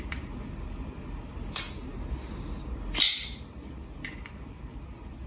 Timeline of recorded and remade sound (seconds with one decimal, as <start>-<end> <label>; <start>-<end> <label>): 0.0-5.3 recorded